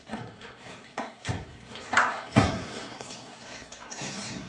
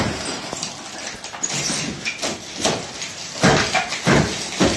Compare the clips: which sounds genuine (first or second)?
second